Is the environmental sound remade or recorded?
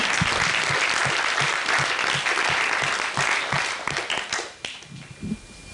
recorded